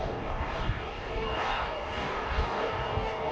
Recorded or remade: remade